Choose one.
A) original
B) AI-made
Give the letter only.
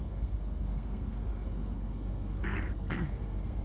B